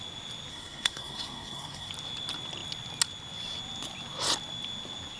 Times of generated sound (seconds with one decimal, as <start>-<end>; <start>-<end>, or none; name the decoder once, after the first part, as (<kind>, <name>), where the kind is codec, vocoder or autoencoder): 0.5-1.9 (codec, SNAC)